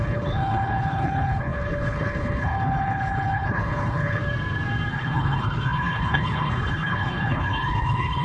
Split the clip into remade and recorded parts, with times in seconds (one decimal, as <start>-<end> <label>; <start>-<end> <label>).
0.0-4.2 remade; 4.2-4.9 recorded; 4.9-8.2 remade